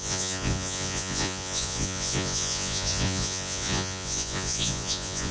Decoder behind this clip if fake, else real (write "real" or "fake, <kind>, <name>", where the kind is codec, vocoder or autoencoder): fake, vocoder, Vocos